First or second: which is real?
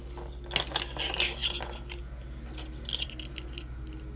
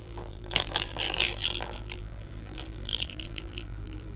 first